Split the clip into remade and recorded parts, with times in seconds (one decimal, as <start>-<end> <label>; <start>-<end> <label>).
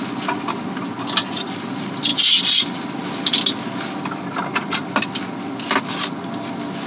0.0-6.9 recorded